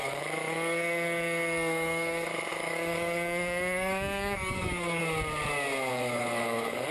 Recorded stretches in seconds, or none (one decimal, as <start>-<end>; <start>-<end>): 5.0-5.9